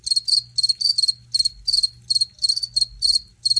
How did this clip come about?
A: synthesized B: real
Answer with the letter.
B